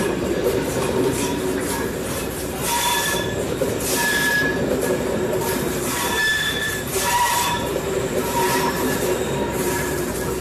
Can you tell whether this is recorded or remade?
remade